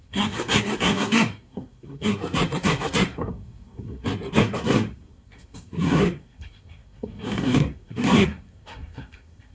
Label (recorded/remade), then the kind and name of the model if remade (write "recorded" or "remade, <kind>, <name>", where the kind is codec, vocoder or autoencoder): remade, codec, SNAC